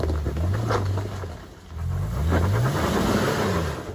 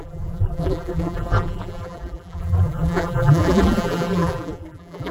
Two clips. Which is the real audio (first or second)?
first